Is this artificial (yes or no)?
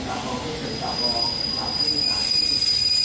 no